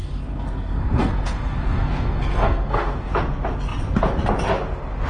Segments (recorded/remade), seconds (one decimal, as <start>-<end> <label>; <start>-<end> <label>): 0.0-3.1 remade; 3.1-5.1 recorded